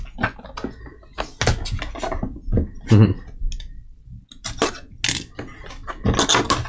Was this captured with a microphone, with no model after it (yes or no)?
yes